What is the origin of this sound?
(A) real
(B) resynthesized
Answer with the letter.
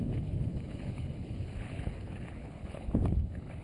B